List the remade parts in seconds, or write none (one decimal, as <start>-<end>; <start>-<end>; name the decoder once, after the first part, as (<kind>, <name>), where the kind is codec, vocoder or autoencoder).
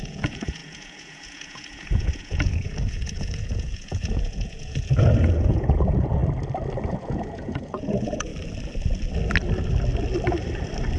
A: 0.0-6.2 (vocoder, Vocos); 6.9-8.3